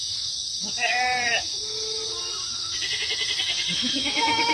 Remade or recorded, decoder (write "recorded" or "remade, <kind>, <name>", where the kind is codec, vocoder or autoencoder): remade, codec, DAC